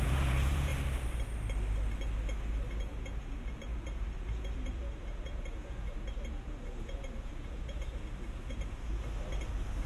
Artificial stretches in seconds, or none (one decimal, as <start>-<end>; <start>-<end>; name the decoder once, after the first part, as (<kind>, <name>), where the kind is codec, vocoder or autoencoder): 0.0-0.7 (vocoder, Vocos); 2.8-9.0; 9.5-9.9